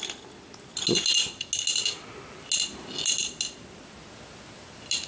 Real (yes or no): yes